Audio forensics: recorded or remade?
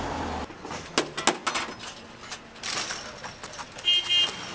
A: recorded